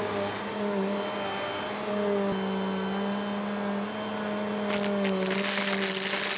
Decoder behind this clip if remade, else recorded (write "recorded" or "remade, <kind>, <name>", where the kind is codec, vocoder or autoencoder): recorded